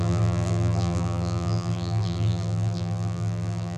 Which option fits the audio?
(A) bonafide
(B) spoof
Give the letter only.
B